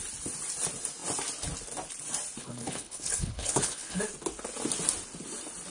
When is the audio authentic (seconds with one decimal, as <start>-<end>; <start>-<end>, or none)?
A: 0.0-2.4; 4.0-5.7